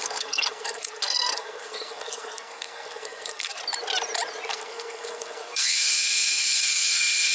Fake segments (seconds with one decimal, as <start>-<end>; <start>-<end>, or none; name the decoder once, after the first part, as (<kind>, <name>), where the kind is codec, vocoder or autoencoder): 0.0-3.6 (codec, SNAC); 4.5-7.3